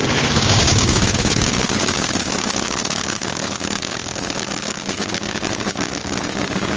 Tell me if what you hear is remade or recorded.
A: remade